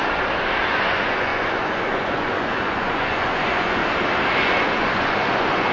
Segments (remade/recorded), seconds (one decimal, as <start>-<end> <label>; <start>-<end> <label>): 0.0-0.6 recorded; 0.6-3.8 remade; 3.8-4.3 recorded; 4.3-5.7 remade